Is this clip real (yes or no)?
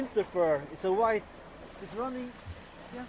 yes